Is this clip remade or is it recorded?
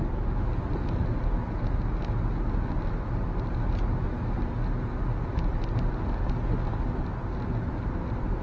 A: recorded